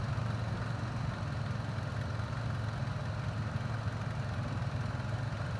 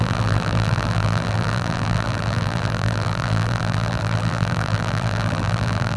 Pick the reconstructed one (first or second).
second